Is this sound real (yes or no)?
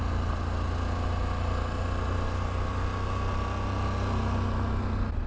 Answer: yes